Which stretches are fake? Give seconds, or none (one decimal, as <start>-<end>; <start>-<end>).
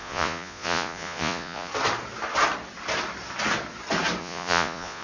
0.0-1.7; 4.2-5.0